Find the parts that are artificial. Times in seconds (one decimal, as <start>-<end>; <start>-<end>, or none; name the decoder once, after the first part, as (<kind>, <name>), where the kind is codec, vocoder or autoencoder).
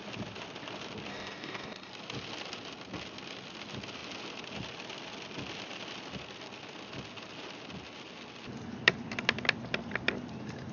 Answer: 1.1-1.9 (codec, DAC)